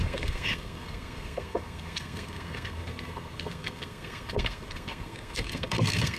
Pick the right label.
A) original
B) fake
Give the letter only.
B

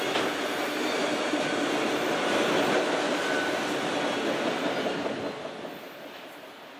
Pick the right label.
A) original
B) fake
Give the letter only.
A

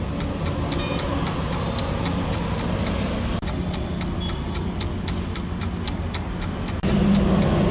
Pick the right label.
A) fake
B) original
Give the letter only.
B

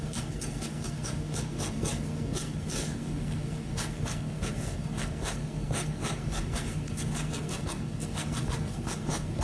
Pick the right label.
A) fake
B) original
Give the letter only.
A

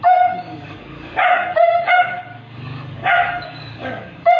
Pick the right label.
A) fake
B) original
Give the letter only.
A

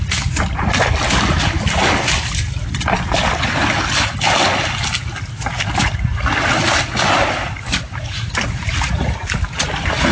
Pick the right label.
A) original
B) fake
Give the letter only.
A